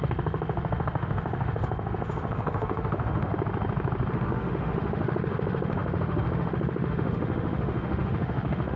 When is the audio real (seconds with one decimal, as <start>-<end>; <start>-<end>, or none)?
3.3-4.1